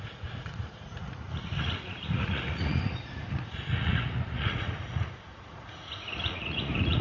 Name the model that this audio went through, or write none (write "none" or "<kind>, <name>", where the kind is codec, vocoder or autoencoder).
vocoder, Vocos